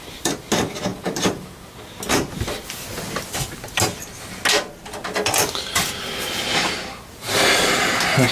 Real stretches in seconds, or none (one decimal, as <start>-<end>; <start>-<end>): 0.0-0.9; 1.7-8.3